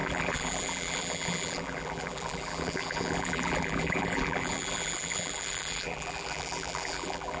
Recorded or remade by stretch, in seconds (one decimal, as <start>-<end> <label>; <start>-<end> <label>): 0.0-7.4 remade